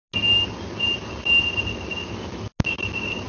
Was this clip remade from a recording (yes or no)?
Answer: no